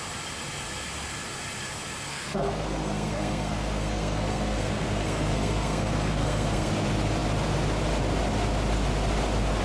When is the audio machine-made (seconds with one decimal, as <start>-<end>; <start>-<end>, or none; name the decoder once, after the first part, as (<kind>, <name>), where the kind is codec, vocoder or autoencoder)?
2.1-6.7 (codec, SNAC)